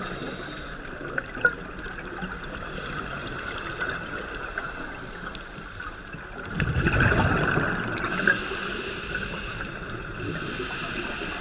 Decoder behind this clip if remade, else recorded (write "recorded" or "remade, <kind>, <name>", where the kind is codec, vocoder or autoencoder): recorded